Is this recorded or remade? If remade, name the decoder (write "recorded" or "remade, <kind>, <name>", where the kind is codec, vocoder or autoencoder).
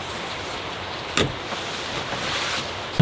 remade, vocoder, BigVGAN v2